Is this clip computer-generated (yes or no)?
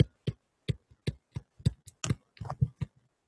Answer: no